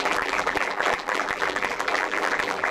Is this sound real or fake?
fake